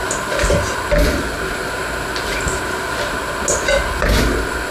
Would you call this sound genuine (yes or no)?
yes